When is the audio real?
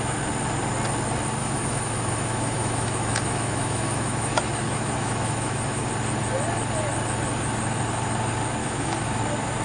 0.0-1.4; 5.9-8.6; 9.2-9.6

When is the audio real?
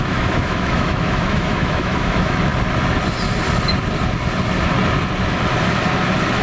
2.5-6.4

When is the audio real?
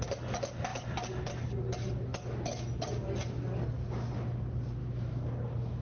0.0-4.8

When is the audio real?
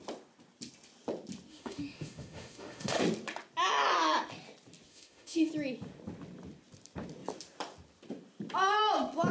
0.0-1.5; 3.0-4.9; 5.5-9.3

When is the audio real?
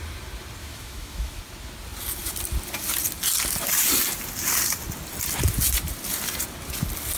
0.0-0.6; 1.4-7.2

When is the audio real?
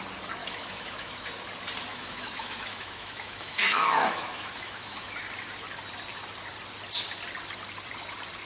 0.0-0.4; 1.3-1.9; 5.1-8.5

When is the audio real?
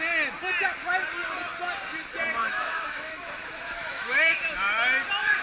0.0-2.4; 4.4-5.4